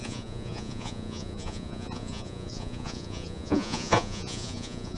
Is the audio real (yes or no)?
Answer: no